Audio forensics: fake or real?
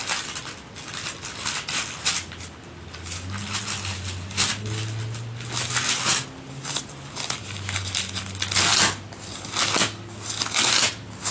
real